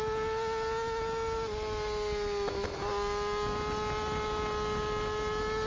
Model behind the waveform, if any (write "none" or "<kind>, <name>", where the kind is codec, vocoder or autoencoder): none